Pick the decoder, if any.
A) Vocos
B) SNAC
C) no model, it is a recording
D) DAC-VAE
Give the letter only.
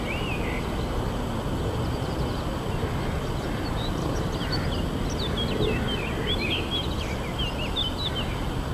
C